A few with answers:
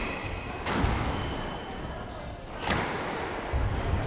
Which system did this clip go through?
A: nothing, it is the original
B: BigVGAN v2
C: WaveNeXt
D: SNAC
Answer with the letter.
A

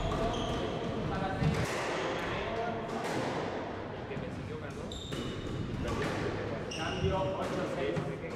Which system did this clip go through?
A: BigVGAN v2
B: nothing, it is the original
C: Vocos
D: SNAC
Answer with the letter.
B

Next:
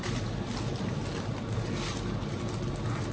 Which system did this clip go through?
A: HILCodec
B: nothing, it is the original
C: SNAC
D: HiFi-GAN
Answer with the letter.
B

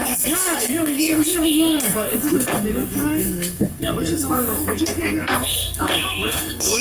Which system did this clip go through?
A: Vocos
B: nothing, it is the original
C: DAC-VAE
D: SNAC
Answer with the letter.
D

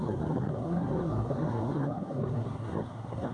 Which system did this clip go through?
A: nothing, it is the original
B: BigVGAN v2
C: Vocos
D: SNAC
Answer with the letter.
D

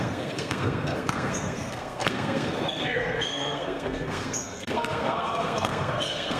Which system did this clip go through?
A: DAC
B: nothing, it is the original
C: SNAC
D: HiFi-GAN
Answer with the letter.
C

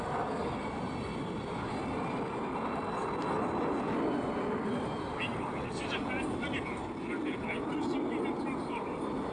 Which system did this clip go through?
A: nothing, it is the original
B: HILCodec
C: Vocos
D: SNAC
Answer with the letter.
A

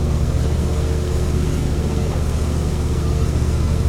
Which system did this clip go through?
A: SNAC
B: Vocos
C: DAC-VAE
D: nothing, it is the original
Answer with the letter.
A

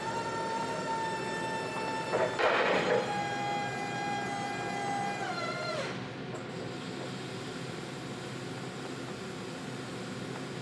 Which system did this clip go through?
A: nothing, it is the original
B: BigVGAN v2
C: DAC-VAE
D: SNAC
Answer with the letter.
A